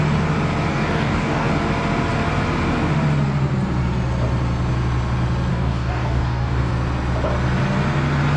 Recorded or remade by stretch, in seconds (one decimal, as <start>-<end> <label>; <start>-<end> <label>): 0.0-0.7 recorded; 0.7-1.5 remade; 1.5-5.5 recorded; 5.5-6.7 remade; 6.7-8.4 recorded